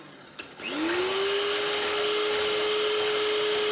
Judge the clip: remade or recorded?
recorded